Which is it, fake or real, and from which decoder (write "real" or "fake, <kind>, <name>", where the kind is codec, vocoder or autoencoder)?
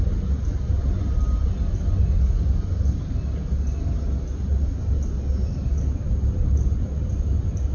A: real